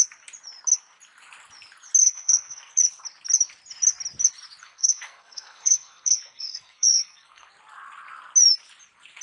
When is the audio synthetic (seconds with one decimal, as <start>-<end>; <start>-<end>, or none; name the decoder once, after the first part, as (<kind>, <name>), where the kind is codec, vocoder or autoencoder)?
2.0-2.8 (codec, SNAC); 4.6-7.5